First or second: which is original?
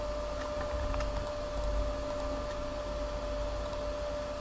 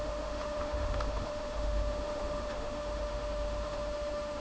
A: first